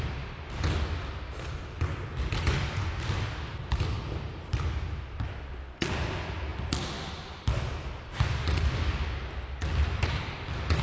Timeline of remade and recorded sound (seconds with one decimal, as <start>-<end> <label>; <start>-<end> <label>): 0.0-10.8 recorded